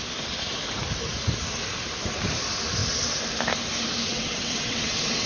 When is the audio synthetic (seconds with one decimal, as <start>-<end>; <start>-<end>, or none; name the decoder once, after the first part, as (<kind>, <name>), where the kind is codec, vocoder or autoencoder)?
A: 4.1-5.3 (vocoder, WaveNeXt)